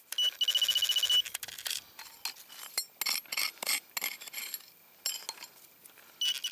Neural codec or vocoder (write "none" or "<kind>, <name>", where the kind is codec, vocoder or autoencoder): none